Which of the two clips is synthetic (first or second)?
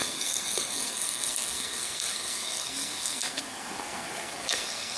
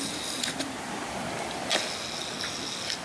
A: first